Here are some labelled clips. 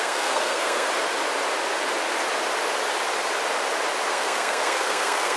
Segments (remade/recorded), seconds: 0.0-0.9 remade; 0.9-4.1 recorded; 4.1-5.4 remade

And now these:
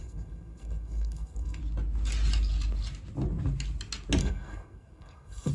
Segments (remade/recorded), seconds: 0.0-1.6 remade; 1.6-4.2 recorded; 4.2-5.5 remade

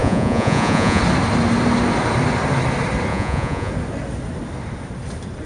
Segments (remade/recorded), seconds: 0.0-1.0 remade; 1.0-3.1 recorded; 3.1-3.7 remade; 3.7-5.5 recorded

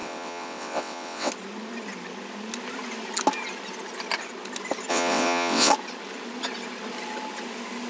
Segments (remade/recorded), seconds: 0.0-1.3 remade; 1.3-4.9 recorded; 4.9-5.7 remade; 5.7-7.9 recorded